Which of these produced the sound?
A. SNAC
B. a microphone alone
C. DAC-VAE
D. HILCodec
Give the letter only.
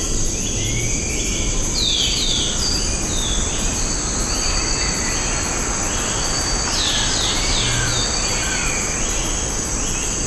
B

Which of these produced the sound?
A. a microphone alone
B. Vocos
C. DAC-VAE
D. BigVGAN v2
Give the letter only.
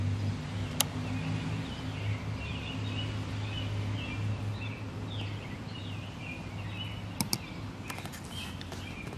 A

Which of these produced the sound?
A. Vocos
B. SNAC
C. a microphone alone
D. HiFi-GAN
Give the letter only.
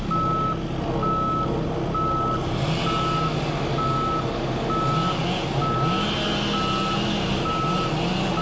C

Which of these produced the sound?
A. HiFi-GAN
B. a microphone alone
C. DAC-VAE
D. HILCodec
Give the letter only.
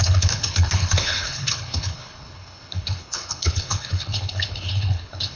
D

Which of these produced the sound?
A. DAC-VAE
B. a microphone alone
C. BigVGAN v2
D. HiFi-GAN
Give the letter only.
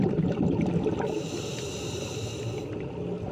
B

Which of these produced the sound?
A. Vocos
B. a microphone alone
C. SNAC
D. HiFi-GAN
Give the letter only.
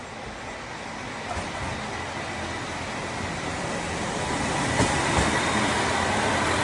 B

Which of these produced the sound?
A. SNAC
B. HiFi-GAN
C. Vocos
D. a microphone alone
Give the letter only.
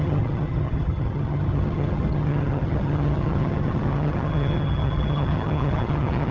B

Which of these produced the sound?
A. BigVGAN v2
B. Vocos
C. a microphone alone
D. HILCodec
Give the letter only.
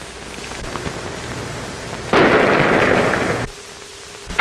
C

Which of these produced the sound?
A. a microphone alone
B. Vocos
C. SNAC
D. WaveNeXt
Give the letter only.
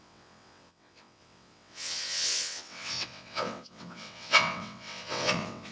D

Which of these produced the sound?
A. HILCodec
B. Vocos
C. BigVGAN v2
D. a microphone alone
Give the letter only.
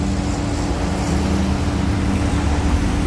D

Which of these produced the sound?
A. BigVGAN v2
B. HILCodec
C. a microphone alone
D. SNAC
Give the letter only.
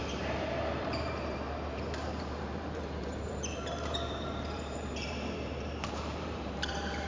A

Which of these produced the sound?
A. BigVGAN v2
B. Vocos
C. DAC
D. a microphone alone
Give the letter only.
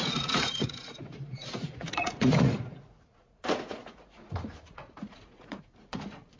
B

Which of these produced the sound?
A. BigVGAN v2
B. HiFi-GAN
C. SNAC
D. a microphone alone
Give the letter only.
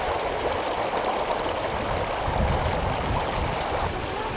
D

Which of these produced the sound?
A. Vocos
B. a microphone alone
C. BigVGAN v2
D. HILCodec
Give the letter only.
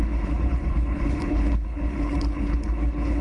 D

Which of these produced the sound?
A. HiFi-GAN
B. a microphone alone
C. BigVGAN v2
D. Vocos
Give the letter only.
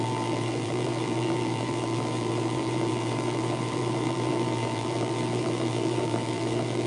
C